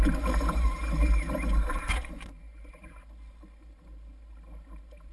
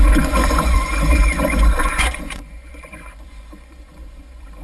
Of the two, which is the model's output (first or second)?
second